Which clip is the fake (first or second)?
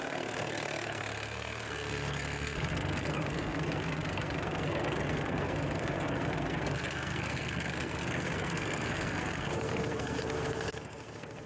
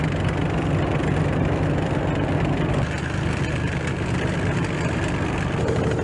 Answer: first